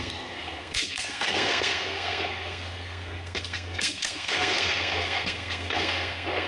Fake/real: fake